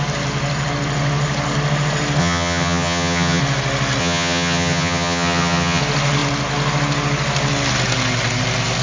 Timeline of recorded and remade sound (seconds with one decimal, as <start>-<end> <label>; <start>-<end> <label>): 0.0-2.2 recorded; 2.2-3.4 remade; 3.4-4.0 recorded; 4.0-5.8 remade; 5.8-8.8 recorded